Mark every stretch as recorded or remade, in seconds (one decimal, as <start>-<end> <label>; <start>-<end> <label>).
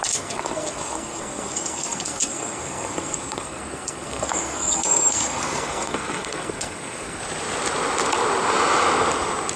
0.0-7.2 remade; 7.2-9.6 recorded